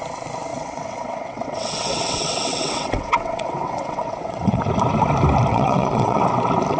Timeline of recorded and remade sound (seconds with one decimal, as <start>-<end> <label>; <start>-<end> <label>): 0.0-0.5 recorded; 0.5-4.6 remade; 4.6-5.5 recorded; 5.5-6.2 remade; 6.2-6.8 recorded